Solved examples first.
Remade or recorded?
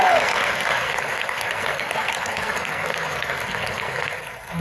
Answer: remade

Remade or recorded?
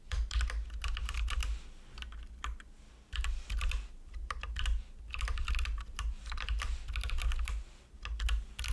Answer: recorded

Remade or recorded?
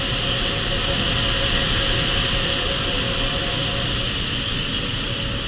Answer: recorded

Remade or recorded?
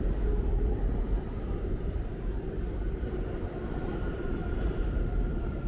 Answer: remade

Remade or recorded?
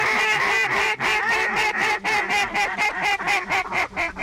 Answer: remade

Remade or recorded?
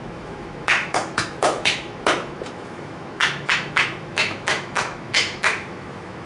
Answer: remade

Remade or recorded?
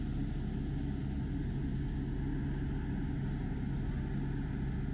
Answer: recorded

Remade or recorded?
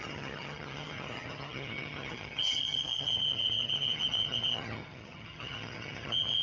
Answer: remade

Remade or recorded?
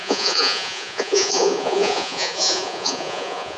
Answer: remade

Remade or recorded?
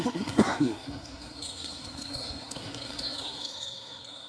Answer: remade